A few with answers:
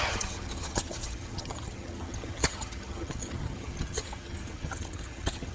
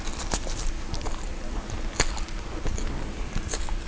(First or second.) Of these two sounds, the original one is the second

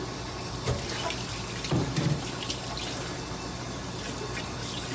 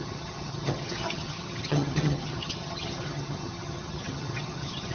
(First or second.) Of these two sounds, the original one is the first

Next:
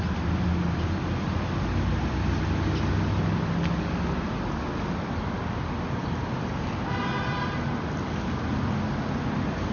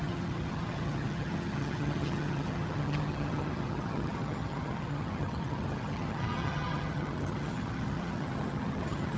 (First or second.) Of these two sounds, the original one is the first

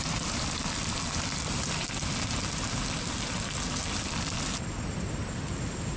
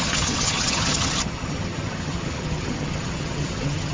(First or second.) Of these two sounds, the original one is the first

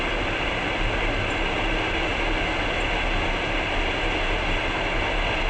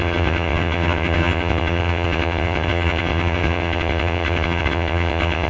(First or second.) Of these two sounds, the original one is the first